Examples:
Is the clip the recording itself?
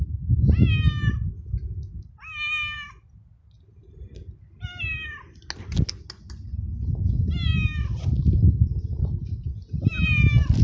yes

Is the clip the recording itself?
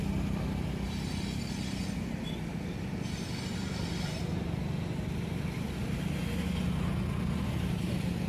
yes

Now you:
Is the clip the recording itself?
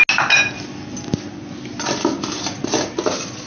yes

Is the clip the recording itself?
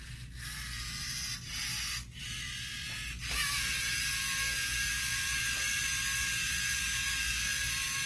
yes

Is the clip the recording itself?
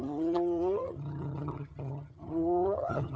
no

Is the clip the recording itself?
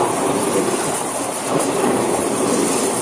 yes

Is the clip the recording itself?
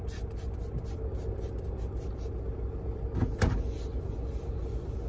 yes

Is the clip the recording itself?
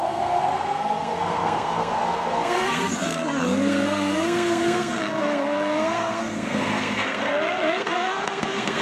no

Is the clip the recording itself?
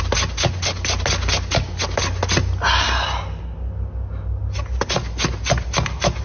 yes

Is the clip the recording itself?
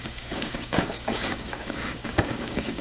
no